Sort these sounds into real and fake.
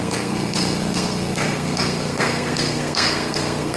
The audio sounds fake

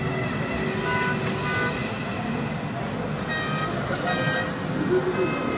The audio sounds real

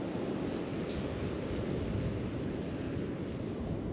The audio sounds real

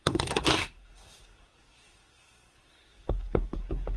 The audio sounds fake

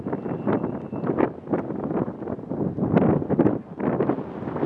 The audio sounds real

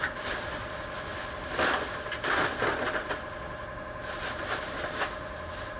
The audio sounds real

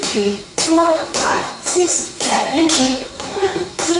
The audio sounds fake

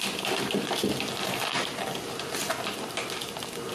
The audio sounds real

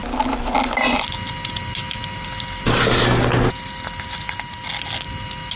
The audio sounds real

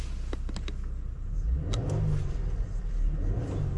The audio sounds real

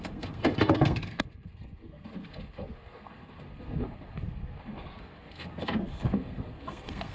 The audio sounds fake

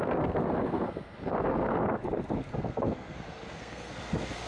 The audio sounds fake